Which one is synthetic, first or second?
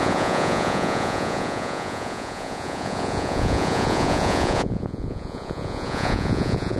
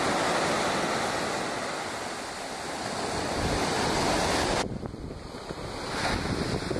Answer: first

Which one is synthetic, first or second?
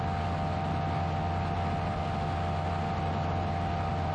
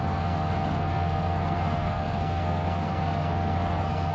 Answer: second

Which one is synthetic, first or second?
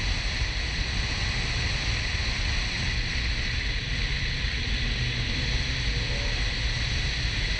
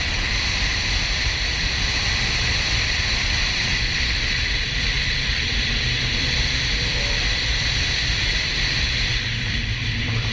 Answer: second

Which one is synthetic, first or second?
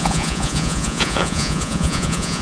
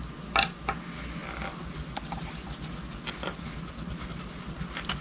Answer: first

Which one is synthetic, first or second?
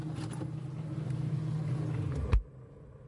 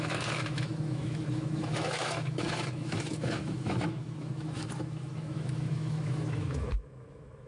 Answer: second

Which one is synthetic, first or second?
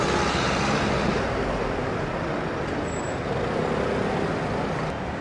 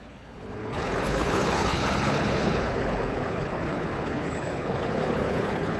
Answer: second